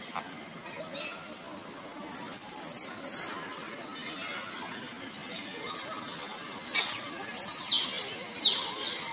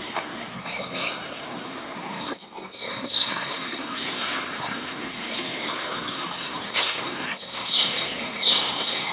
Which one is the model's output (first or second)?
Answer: second